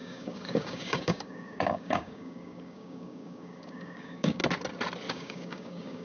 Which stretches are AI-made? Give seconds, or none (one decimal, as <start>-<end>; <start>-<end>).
0.0-4.4; 5.1-6.0